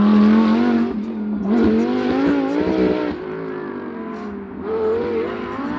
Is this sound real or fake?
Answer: real